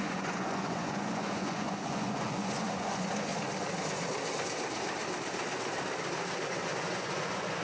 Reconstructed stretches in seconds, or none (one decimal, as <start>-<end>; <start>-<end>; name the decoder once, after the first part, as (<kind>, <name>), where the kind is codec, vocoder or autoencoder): 0.0-3.3 (vocoder, Vocos); 6.4-7.6